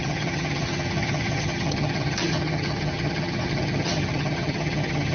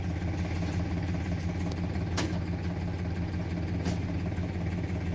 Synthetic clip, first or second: first